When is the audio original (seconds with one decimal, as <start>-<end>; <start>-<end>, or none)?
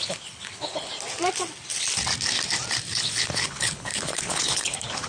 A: 0.9-3.0